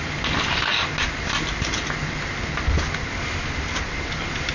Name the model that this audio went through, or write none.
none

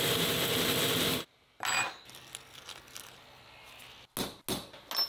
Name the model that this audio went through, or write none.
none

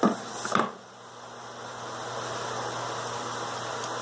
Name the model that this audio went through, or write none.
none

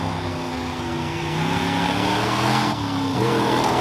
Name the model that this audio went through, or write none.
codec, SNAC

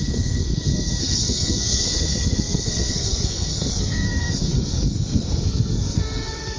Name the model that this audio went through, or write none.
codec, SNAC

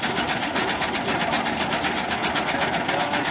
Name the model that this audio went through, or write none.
none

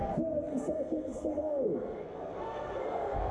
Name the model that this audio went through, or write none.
codec, SNAC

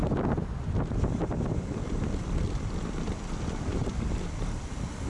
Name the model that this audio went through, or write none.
none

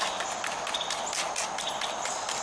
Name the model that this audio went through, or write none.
none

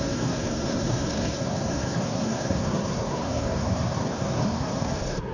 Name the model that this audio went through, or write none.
codec, SNAC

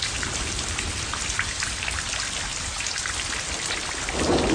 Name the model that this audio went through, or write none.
none